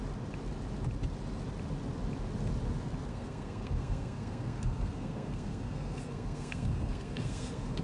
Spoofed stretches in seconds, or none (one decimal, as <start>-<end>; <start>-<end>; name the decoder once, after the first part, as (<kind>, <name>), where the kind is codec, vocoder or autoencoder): 3.1-7.8 (codec, SNAC)